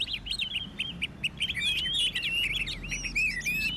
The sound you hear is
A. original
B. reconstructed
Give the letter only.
A